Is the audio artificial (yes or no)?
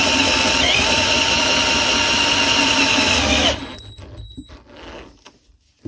no